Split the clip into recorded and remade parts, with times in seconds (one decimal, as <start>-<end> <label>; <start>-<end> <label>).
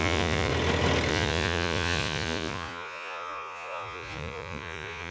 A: 0.0-0.5 remade; 0.5-1.1 recorded; 1.1-5.1 remade